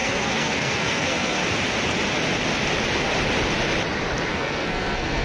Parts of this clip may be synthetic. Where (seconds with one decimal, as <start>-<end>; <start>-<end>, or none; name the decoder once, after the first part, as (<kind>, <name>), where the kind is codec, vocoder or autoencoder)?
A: 0.0-1.4 (codec, SNAC); 4.3-5.2